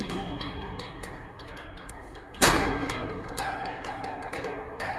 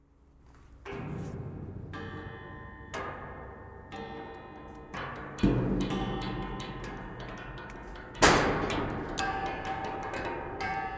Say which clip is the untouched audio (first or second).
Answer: second